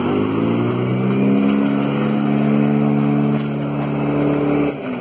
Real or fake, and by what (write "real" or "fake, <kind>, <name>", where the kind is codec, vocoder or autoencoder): real